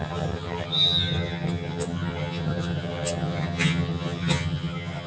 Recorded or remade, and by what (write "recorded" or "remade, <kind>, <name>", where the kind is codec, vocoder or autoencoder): remade, vocoder, HiFi-GAN